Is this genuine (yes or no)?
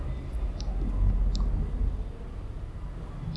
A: yes